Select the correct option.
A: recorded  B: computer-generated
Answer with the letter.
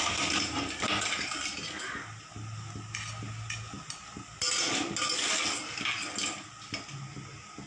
A